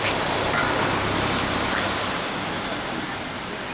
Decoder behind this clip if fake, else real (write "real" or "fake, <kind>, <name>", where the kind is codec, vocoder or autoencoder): real